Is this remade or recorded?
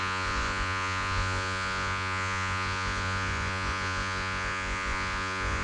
remade